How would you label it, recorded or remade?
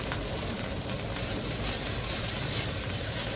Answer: remade